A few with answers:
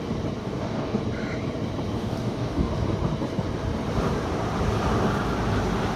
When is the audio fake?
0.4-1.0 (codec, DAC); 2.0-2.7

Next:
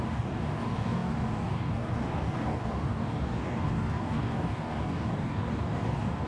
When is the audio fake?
0.0-6.3 (codec, DAC)

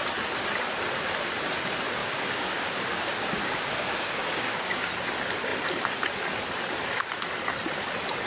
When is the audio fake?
2.0-4.9 (codec, DAC)

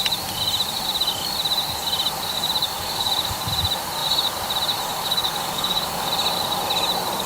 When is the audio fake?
2.6-3.1 (codec, DAC); 4.9-6.1

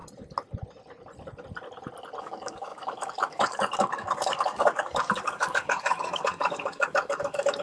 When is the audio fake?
2.2-7.6 (codec, DAC)

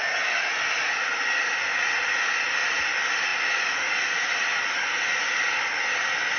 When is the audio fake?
none

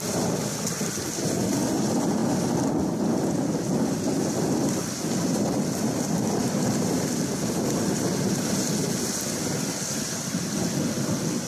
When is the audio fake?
none

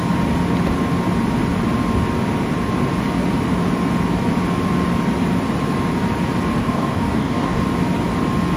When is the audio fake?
6.6-7.6 (codec, DAC)